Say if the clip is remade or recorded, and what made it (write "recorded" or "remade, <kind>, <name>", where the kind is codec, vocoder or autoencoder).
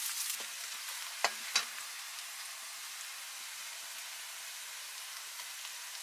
recorded